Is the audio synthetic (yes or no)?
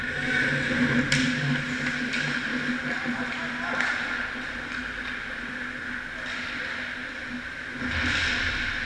no